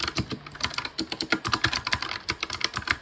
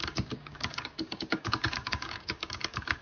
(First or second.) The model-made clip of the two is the second